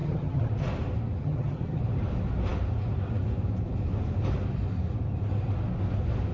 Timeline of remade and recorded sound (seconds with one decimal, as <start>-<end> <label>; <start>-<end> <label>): 0.0-0.5 remade; 0.5-1.2 recorded; 1.2-1.8 remade; 1.8-6.3 recorded